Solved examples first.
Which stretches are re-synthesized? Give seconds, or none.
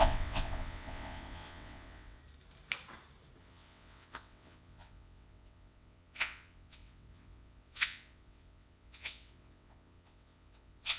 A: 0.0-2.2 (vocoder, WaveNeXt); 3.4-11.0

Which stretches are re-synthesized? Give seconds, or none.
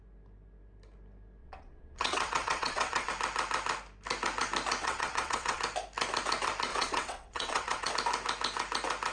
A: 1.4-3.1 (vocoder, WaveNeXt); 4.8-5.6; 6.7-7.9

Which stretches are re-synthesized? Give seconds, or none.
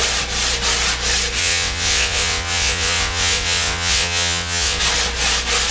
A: 1.4-4.8 (vocoder, WaveNeXt)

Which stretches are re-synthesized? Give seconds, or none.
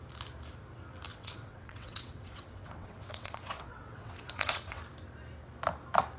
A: 1.1-4.8 (vocoder, WaveNeXt)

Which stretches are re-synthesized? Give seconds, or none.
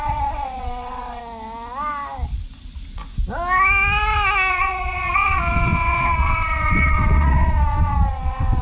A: 0.0-1.2 (vocoder, WaveNeXt); 4.5-8.6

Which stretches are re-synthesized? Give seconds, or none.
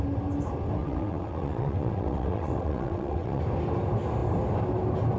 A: 0.8-3.4 (vocoder, WaveNeXt)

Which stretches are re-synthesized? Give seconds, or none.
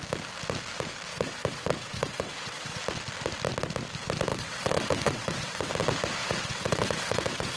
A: 1.1-2.8 (vocoder, WaveNeXt); 4.3-5.7; 6.2-7.6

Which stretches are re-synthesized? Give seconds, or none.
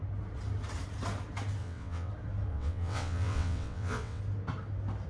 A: 1.6-2.1 (vocoder, WaveNeXt); 2.5-4.2